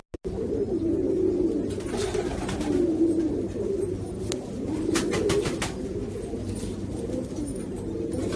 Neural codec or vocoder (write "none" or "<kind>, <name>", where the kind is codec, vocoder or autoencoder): none